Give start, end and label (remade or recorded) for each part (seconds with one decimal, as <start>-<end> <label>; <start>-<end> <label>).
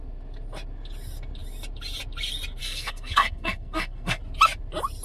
0.0-2.6 recorded; 2.6-4.2 remade; 4.2-5.0 recorded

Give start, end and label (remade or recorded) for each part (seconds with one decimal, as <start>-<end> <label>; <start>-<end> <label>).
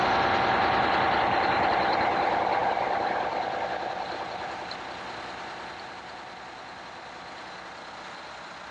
0.0-8.7 recorded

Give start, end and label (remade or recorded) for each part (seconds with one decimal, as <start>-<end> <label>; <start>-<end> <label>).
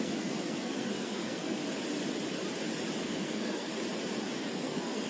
0.0-1.6 remade; 1.6-3.0 recorded; 3.0-3.7 remade; 3.7-4.5 recorded; 4.5-5.1 remade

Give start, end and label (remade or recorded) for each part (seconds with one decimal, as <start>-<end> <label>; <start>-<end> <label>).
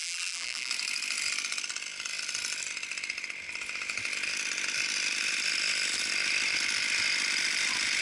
0.0-0.7 remade; 0.7-8.0 recorded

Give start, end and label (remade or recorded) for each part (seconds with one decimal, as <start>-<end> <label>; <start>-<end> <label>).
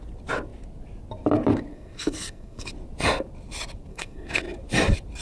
0.0-1.7 recorded; 1.7-2.7 remade; 2.7-3.9 recorded; 3.9-4.4 remade; 4.4-5.2 recorded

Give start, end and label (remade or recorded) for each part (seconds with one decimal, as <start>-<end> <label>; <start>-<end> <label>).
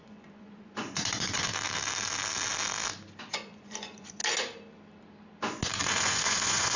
0.0-1.5 remade; 1.5-3.3 recorded; 3.3-4.2 remade; 4.2-5.8 recorded; 5.8-6.8 remade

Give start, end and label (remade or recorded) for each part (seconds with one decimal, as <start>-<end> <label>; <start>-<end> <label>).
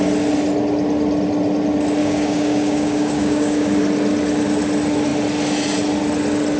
0.0-2.0 recorded; 2.0-3.8 remade; 3.8-6.6 recorded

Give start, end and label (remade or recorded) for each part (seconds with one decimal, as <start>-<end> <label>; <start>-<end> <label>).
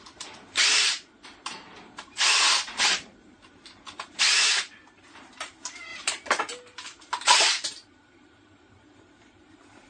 0.0-9.9 remade